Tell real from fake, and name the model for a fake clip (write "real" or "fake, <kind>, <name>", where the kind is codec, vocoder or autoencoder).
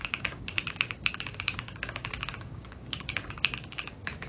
fake, codec, DAC